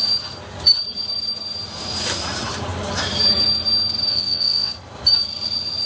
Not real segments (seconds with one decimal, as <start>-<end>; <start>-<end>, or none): 4.1-4.7